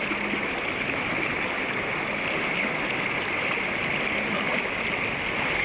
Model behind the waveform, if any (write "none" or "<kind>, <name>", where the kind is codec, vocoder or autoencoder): none